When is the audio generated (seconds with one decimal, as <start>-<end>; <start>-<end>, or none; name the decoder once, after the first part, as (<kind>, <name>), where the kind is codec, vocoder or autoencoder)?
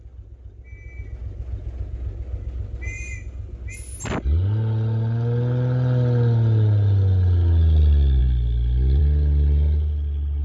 none